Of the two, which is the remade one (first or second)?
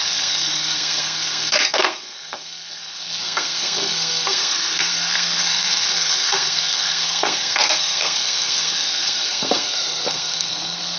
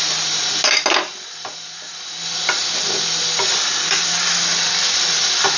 first